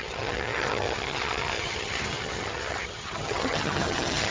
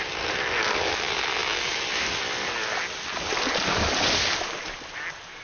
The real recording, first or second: second